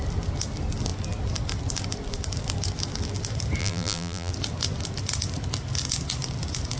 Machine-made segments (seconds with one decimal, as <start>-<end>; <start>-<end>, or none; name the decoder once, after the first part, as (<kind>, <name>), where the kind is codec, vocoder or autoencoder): 3.6-4.3 (vocoder, BigVGAN v2)